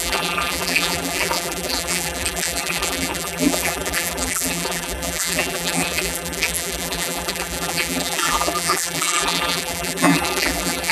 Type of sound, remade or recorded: remade